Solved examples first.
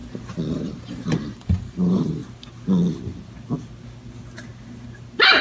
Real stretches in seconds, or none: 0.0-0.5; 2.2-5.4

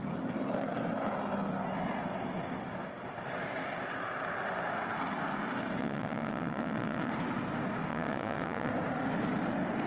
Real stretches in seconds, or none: 0.0-5.8; 7.1-7.9; 8.7-9.9

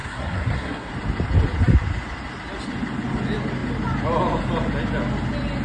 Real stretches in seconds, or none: 0.9-5.6